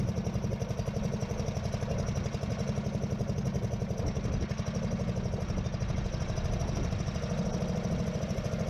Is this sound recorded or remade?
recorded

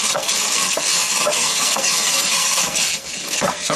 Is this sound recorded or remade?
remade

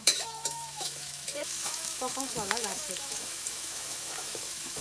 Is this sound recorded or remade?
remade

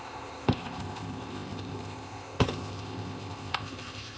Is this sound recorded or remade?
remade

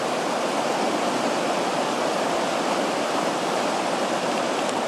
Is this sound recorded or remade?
recorded